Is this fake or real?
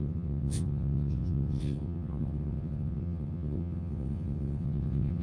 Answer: fake